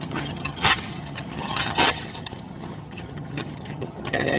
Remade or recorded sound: remade